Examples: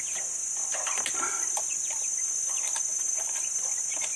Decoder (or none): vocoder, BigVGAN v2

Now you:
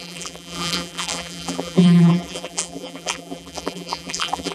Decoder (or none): vocoder, BigVGAN v2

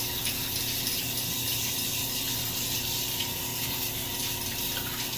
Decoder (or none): none